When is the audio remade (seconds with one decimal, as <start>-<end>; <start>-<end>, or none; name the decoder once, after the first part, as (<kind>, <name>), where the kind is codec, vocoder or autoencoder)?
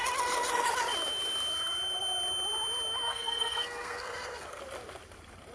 3.1-4.6 (codec, SNAC)